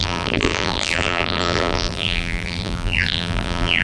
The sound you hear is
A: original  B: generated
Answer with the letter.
B